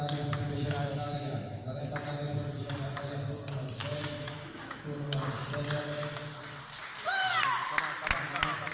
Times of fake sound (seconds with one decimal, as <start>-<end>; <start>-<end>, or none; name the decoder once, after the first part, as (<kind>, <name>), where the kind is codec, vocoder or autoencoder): 0.9-1.9 (autoencoder, DAC-VAE); 3.8-4.8